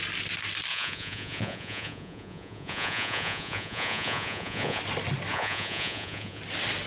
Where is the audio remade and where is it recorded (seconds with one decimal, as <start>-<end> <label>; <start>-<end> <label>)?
0.0-0.7 recorded; 0.7-4.8 remade; 4.8-5.3 recorded; 5.3-6.4 remade; 6.4-6.9 recorded